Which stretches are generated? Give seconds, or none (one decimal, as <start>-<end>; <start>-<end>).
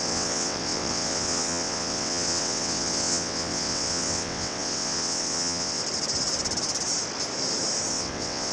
0.0-5.8; 7.9-8.5